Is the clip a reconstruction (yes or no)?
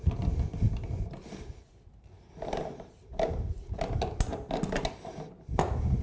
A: no